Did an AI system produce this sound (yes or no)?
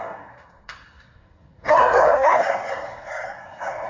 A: yes